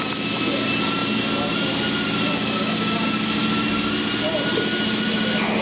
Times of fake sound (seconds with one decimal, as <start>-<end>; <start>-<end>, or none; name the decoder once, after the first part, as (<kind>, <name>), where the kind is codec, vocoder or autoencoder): none